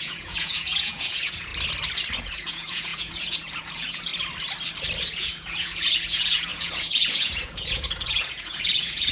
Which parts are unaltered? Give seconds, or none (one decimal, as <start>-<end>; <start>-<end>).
1.5-2.2; 4.1-5.1